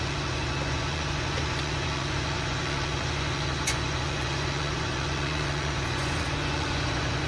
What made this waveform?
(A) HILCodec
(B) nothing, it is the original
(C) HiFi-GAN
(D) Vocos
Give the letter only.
D